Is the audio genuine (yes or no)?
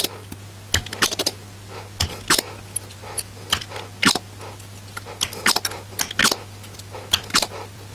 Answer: yes